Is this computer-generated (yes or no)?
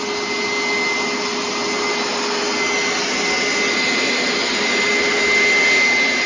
no